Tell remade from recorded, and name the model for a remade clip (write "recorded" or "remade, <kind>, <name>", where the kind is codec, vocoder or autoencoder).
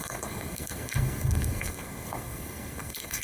remade, codec, SNAC